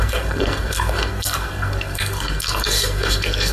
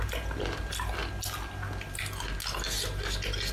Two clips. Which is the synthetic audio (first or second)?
first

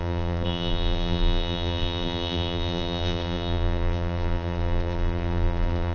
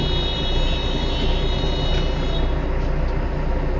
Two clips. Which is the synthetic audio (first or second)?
first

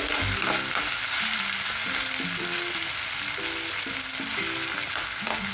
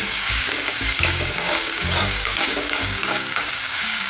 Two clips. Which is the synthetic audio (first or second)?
second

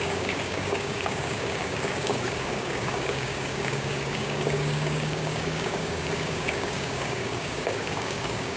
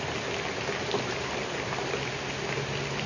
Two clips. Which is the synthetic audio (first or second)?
first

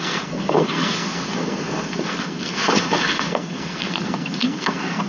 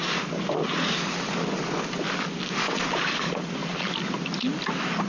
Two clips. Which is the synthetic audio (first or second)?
first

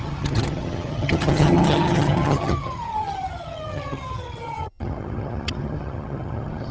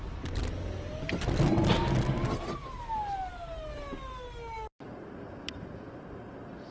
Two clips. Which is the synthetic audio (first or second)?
first